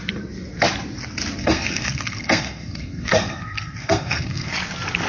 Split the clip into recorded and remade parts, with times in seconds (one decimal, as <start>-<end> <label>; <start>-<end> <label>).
0.0-1.4 recorded; 1.4-4.5 remade; 4.5-5.1 recorded